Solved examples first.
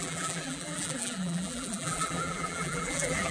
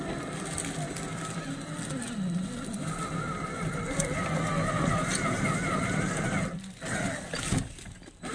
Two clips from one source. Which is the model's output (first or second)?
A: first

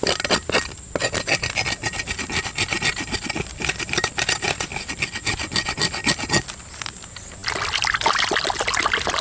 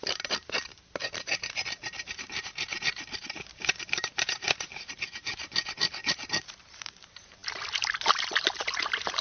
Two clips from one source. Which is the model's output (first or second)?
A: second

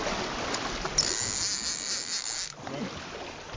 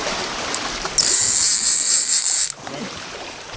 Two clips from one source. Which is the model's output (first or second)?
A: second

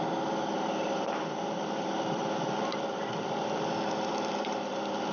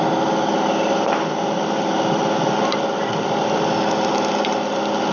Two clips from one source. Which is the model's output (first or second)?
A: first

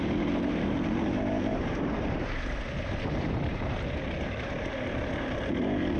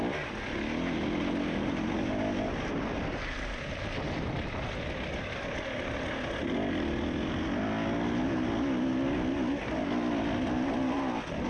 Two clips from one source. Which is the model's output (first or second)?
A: first